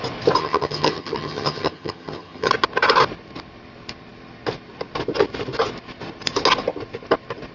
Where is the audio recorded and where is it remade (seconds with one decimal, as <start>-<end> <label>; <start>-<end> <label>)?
0.0-0.4 recorded; 0.4-2.5 remade; 2.5-7.5 recorded